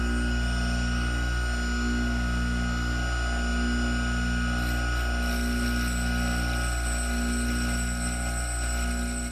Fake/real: real